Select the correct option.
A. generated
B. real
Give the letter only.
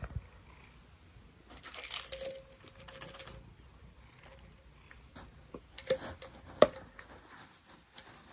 B